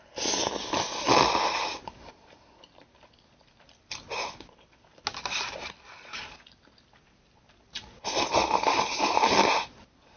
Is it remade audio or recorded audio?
recorded